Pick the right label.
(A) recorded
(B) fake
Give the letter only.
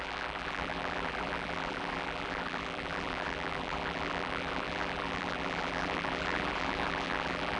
B